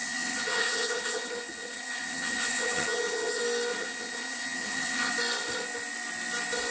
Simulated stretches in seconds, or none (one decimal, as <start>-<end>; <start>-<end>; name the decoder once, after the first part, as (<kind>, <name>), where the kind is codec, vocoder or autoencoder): 0.0-3.4 (vocoder, HiFi-GAN); 3.8-5.1